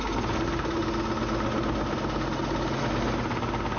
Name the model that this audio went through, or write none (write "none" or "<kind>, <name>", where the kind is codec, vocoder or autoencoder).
none